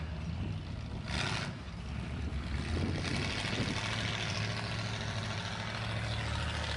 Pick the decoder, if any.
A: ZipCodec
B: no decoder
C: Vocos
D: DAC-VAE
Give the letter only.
B